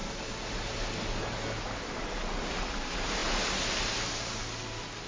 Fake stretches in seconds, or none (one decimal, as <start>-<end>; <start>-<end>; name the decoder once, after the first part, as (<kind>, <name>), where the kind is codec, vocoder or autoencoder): none